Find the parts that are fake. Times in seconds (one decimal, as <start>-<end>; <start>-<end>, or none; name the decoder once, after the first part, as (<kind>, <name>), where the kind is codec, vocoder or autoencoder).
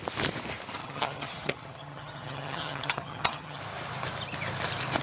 0.8-3.6 (vocoder, HiFi-GAN)